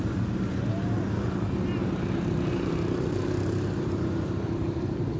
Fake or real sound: fake